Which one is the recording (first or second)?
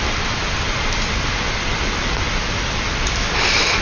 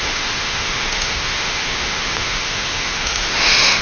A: first